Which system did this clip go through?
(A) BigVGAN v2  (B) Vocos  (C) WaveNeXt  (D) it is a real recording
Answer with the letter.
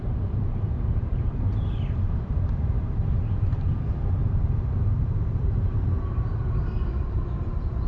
A